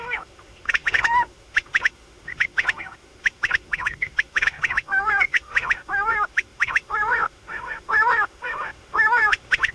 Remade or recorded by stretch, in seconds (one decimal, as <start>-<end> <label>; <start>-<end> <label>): 0.0-9.7 remade

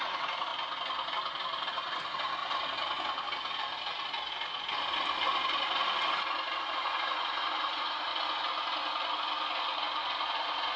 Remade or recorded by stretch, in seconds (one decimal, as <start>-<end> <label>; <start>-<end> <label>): 0.0-0.5 remade; 0.5-1.7 recorded; 1.7-2.4 remade; 2.4-6.6 recorded; 6.6-8.1 remade; 8.1-10.2 recorded; 10.2-10.8 remade

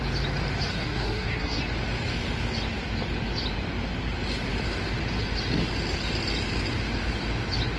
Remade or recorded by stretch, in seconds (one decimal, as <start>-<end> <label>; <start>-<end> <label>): 0.0-0.7 recorded; 0.7-1.6 remade; 1.6-7.8 recorded

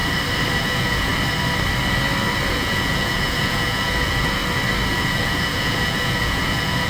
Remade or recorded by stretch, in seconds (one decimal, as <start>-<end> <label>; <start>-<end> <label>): 0.0-0.6 recorded; 0.6-1.1 remade; 1.1-2.5 recorded; 2.5-4.4 remade; 4.4-4.9 recorded; 4.9-6.9 remade

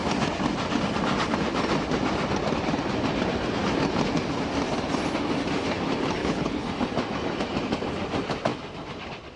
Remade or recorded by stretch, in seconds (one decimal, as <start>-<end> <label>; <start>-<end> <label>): 0.0-6.2 recorded; 6.2-6.7 remade; 6.7-9.4 recorded

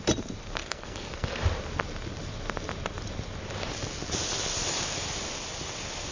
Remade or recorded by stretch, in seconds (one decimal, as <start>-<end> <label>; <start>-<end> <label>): 0.0-0.6 recorded; 0.6-1.4 remade; 1.4-6.1 recorded

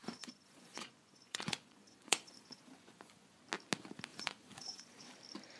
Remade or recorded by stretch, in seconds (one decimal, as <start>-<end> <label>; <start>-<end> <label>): 0.0-3.4 remade; 3.4-4.1 recorded; 4.1-5.1 remade; 5.1-5.6 recorded

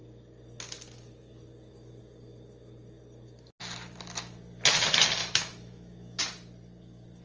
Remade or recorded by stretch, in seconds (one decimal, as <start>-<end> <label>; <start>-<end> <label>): 0.0-5.2 recorded; 5.2-6.2 remade; 6.2-7.2 recorded